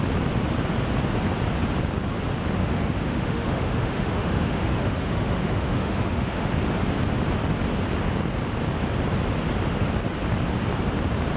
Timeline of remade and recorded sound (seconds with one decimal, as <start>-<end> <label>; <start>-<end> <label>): 0.0-2.6 recorded; 2.6-6.5 remade; 6.5-11.4 recorded